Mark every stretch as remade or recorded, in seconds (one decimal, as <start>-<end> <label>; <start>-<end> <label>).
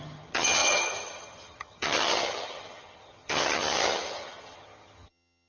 0.0-5.5 remade